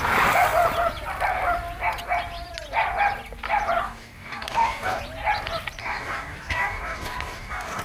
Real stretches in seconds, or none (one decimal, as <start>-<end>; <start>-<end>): 0.0-3.8; 5.0-5.8